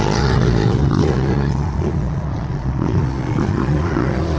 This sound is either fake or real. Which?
fake